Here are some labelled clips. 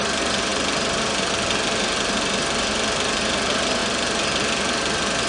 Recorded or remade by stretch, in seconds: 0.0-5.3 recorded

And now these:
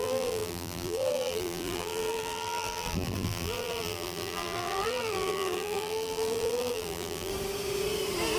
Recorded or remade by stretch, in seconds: 0.0-7.3 remade; 7.3-8.4 recorded

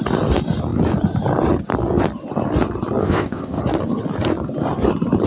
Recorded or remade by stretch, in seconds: 0.0-3.0 recorded; 3.0-3.6 remade; 3.6-5.3 recorded

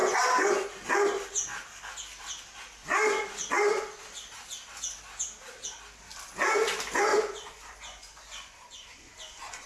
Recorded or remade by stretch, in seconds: 0.0-0.5 remade; 0.5-2.8 recorded; 2.8-4.0 remade; 4.0-7.1 recorded; 7.1-9.7 remade

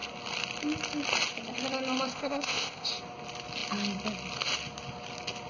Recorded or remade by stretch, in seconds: 0.0-2.1 recorded; 2.1-2.9 remade; 2.9-5.5 recorded